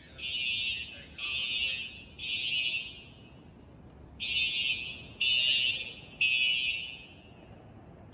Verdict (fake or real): real